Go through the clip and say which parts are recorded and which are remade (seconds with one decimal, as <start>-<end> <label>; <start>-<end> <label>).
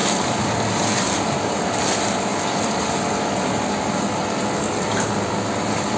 0.0-6.0 recorded